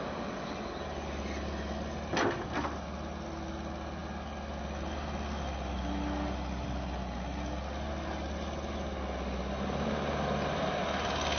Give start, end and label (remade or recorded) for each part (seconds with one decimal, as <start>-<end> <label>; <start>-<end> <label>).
0.0-11.4 recorded